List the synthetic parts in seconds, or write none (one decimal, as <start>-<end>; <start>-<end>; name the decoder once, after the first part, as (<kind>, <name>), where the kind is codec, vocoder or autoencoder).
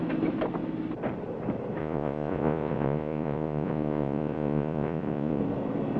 1.8-5.4 (vocoder, Vocos)